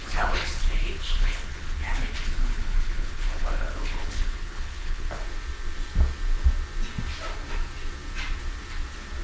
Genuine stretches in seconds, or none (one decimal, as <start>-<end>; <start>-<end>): 5.2-9.2